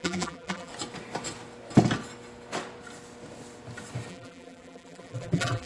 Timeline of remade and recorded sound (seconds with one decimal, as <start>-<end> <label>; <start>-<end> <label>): 0.0-0.7 remade; 0.7-4.1 recorded; 4.1-5.7 remade